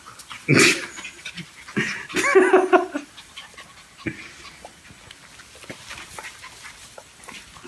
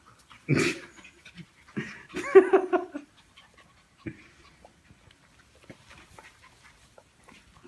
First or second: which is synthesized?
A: second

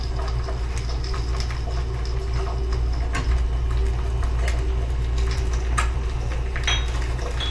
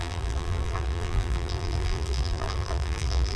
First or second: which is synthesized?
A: second